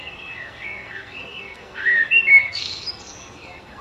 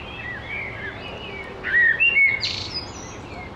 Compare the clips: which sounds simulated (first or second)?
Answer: first